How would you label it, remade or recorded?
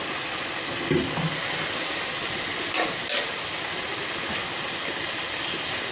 recorded